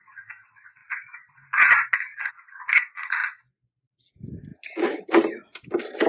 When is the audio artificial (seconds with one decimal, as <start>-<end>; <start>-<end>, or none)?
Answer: 4.5-6.1